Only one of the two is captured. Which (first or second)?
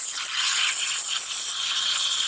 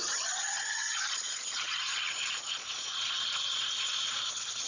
first